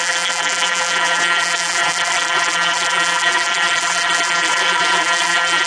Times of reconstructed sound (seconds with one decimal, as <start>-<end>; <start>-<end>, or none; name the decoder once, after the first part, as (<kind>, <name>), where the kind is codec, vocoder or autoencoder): 0.0-5.7 (vocoder, BigVGAN v2)